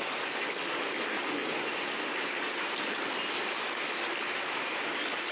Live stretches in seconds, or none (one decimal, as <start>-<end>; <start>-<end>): 0.0-5.3